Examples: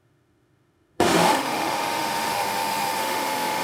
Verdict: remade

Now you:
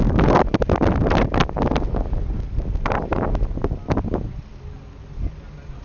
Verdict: recorded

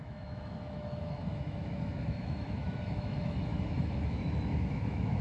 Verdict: remade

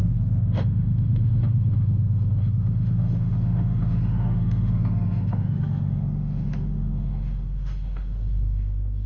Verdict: remade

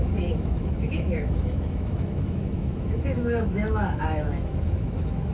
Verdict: remade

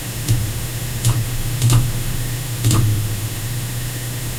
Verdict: remade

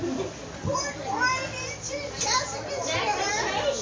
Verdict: recorded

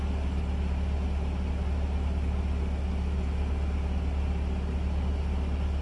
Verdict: recorded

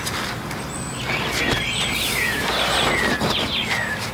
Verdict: recorded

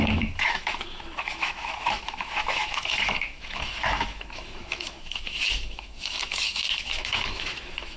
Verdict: remade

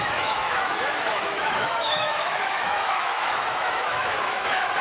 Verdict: remade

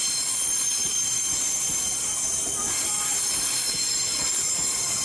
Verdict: recorded